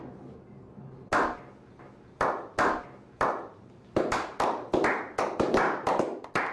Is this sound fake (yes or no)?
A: no